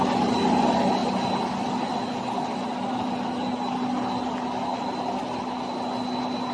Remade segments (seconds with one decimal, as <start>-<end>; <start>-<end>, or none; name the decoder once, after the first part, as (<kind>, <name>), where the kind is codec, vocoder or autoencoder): none